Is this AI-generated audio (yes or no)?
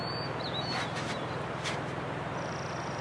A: yes